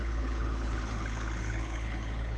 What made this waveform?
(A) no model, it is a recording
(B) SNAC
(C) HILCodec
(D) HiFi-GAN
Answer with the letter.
C